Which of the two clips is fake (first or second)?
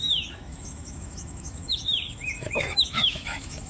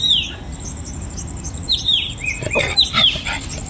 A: first